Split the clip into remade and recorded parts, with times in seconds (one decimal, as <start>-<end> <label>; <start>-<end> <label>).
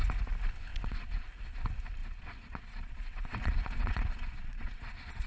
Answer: 0.0-0.7 recorded; 0.7-1.3 remade; 1.3-2.0 recorded; 2.0-5.3 remade